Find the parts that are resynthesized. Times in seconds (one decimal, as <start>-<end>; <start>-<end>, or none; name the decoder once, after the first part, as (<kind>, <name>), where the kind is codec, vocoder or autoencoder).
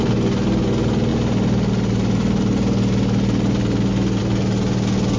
none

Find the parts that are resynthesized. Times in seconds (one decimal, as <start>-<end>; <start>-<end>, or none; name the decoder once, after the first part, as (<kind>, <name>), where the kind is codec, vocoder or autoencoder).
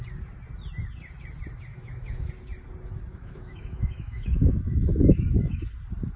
1.7-2.3 (autoencoder, DAC-VAE); 3.1-5.7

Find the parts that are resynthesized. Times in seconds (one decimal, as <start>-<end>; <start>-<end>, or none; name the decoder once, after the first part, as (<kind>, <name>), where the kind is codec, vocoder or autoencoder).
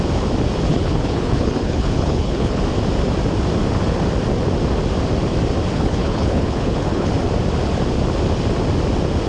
0.7-2.6 (codec, HILCodec); 5.7-7.1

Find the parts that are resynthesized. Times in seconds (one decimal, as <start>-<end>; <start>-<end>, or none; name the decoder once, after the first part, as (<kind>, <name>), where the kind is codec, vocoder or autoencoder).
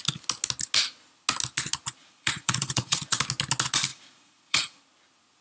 2.0-3.2 (vocoder, Vocos); 3.9-4.8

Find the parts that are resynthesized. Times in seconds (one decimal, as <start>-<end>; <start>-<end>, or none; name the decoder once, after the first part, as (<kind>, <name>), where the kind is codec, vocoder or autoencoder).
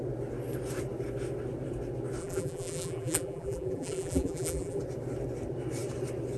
2.2-4.8 (vocoder, BigVGAN v2)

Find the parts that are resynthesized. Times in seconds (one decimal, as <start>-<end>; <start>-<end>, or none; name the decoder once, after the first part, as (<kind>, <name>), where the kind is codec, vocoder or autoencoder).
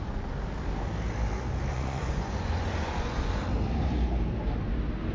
1.7-3.3 (vocoder, Vocos)